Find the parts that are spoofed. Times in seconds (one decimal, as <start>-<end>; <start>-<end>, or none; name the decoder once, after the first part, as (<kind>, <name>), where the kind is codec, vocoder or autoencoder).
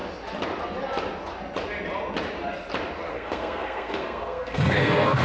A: 3.1-5.2 (codec, SNAC)